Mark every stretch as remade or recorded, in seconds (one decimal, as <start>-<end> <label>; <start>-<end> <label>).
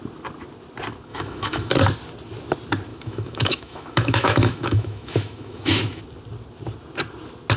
0.0-1.1 recorded; 1.1-1.7 remade; 1.7-2.9 recorded; 2.9-6.0 remade; 6.0-7.6 recorded